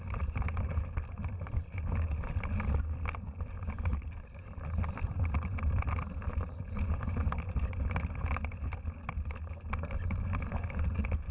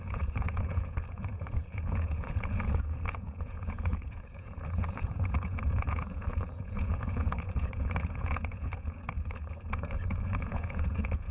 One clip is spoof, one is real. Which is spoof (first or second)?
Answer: second